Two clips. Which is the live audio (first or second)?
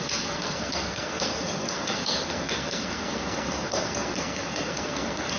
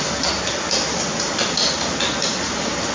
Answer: second